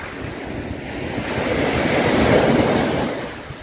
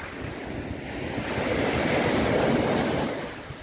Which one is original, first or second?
first